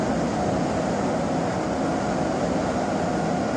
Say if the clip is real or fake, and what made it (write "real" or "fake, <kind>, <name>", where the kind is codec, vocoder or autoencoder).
real